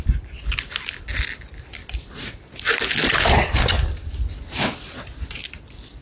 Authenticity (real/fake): fake